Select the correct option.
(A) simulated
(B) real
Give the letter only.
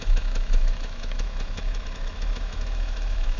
A